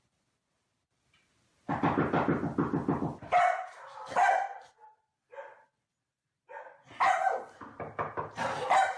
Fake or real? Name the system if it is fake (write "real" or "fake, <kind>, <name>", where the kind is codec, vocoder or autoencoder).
real